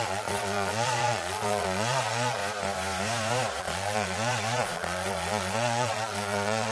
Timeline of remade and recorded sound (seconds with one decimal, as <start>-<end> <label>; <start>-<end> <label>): 0.0-2.4 remade; 2.4-3.6 recorded; 3.6-6.7 remade